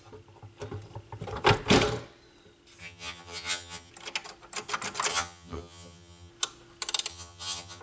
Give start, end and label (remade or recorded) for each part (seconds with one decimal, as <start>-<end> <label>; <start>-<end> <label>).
0.0-2.8 recorded; 2.8-3.9 remade; 3.9-5.1 recorded; 5.1-6.3 remade; 6.3-7.1 recorded; 7.1-7.8 remade